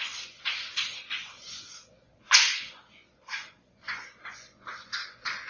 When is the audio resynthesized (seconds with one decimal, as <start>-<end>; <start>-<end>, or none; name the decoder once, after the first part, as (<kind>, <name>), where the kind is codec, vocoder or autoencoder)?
0.0-5.5 (vocoder, Vocos)